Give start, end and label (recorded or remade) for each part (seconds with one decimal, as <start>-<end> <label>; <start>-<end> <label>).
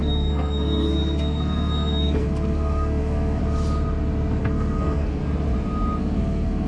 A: 0.0-3.4 remade; 3.4-4.4 recorded; 4.4-5.2 remade; 5.2-6.0 recorded; 6.0-6.7 remade